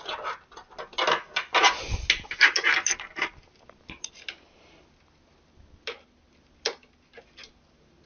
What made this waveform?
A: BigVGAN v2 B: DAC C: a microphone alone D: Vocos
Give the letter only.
C